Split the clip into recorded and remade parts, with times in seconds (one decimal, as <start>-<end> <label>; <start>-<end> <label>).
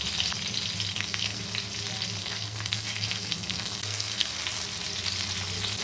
0.0-0.9 recorded; 0.9-1.4 remade; 1.4-2.2 recorded; 2.2-4.4 remade; 4.4-5.8 recorded